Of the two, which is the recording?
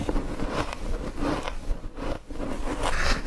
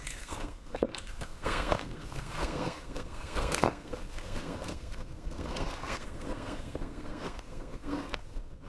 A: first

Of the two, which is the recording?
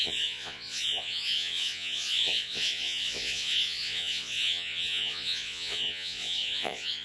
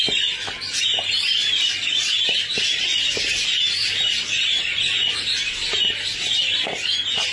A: second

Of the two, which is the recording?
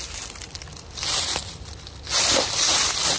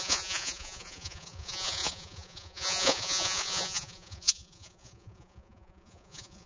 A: first